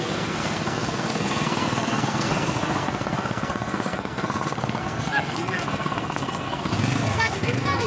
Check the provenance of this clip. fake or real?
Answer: fake